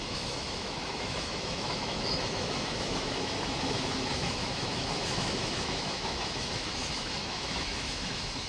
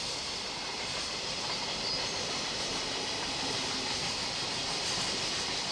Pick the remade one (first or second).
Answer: first